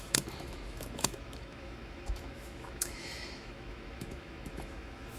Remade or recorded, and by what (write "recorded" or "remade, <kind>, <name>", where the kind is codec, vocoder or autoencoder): remade, autoencoder, DAC-VAE